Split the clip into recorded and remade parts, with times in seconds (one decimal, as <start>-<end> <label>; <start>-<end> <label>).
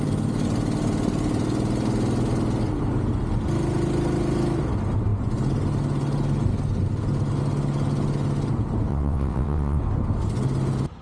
0.0-8.9 recorded; 8.9-9.8 remade; 9.8-11.0 recorded